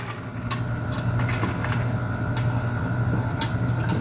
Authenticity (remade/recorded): recorded